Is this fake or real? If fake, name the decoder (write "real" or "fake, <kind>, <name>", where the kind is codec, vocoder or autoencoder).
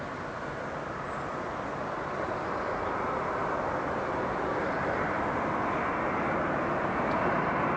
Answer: real